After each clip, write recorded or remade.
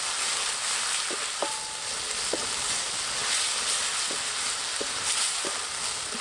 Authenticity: recorded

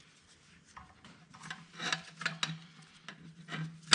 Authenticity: recorded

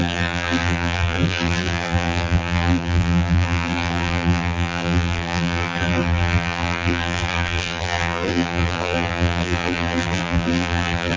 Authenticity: remade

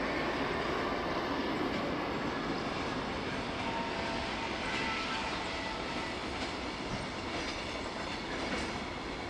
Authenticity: recorded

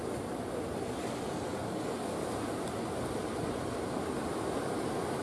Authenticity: recorded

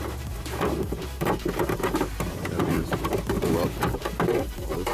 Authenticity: remade